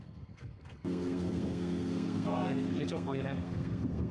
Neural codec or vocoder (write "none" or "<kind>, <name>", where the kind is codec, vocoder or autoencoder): codec, SNAC